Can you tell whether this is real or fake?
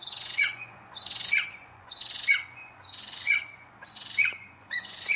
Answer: fake